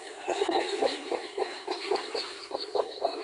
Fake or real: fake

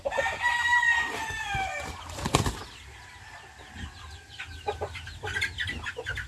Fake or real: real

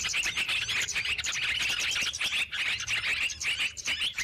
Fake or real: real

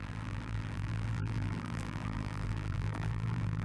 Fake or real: fake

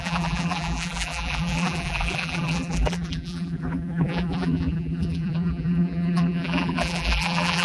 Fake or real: fake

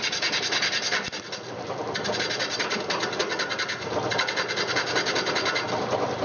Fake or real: fake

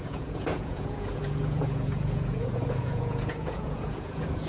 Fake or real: fake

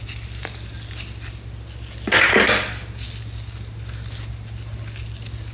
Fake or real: real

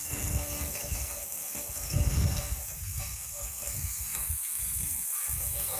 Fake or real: fake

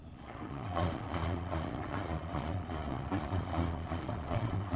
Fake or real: fake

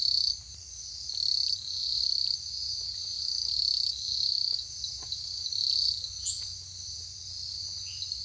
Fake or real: real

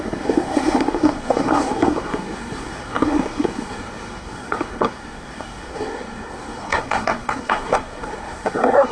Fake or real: fake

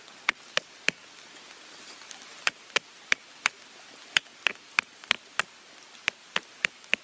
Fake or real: real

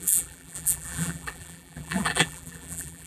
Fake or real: fake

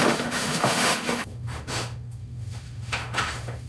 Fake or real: fake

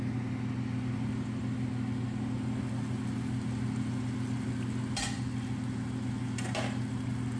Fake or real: real